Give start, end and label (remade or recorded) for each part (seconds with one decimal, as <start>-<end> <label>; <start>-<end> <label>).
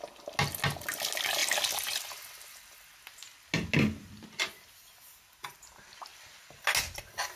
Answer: 0.0-7.4 recorded